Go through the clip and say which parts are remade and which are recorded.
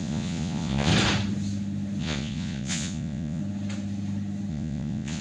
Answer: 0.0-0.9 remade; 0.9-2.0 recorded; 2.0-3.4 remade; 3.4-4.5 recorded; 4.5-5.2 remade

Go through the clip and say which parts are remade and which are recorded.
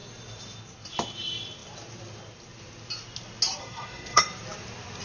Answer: 0.0-3.6 recorded; 3.6-4.2 remade; 4.2-5.0 recorded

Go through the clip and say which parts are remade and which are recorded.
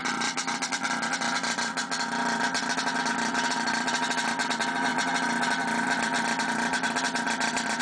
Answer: 0.0-7.8 remade